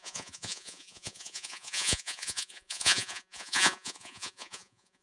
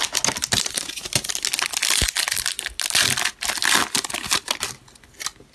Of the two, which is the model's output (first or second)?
first